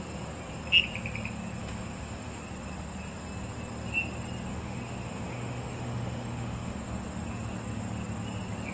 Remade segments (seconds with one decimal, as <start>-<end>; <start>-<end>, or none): 1.6-2.4; 4.5-6.8